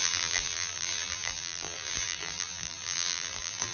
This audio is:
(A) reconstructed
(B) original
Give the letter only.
A